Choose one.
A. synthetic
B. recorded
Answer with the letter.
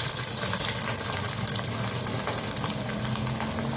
B